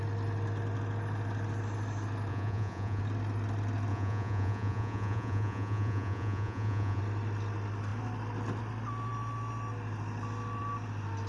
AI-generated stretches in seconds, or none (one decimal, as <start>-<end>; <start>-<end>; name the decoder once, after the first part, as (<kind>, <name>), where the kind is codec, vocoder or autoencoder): 2.3-3.0 (vocoder, Vocos); 3.9-7.0

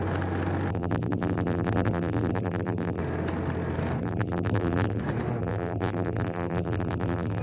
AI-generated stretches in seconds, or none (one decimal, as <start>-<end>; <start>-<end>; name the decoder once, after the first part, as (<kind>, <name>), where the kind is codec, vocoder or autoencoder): 0.7-3.0 (vocoder, BigVGAN v2); 4.0-5.0; 5.4-7.4

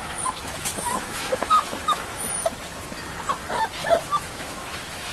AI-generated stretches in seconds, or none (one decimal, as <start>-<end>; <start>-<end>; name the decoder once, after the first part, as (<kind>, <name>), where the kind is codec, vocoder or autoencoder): 0.0-2.5 (autoencoder, DAC-VAE); 3.8-5.1

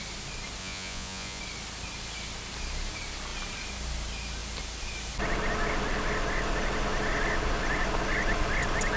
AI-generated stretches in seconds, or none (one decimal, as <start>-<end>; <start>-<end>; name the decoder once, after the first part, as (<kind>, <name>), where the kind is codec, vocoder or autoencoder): 0.6-1.4 (vocoder, Vocos)

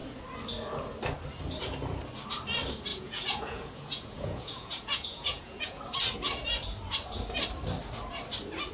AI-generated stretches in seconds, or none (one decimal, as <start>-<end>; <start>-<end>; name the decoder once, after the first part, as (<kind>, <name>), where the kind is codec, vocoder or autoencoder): 2.9-5.8 (vocoder, Vocos)

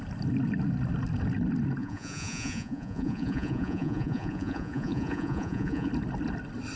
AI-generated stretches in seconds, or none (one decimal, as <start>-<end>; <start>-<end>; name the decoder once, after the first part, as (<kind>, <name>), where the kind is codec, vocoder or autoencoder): 1.8-5.9 (vocoder, Vocos)

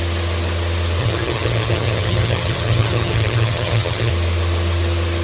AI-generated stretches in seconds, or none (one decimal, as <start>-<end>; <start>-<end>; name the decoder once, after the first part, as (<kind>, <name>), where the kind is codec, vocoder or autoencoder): 1.0-4.1 (vocoder, HiFi-GAN)